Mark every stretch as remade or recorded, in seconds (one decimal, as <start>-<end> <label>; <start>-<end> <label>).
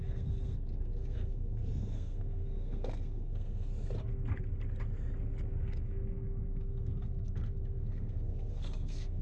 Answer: 0.0-3.7 remade; 3.7-5.6 recorded; 5.6-9.2 remade